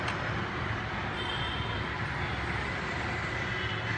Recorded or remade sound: recorded